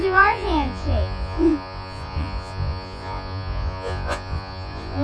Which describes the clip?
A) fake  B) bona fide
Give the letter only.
A